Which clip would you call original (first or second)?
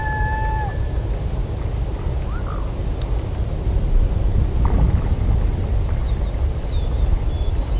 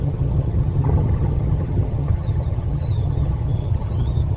first